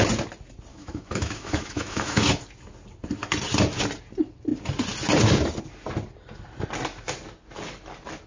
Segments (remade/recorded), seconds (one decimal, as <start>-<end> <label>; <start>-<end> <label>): 0.0-0.7 recorded; 0.7-2.4 remade; 2.4-8.3 recorded